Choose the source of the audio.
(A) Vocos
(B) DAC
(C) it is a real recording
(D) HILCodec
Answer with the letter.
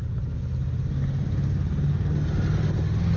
C